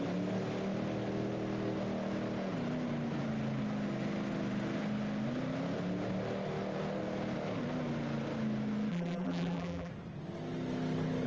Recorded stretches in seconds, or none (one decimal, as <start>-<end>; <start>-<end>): 0.0-8.9; 9.9-11.3

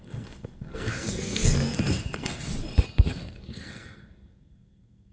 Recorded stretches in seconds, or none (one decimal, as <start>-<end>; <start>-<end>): 2.5-3.1

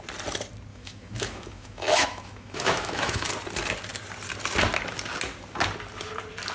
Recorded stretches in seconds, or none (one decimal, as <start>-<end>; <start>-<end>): 0.0-0.7; 3.3-6.5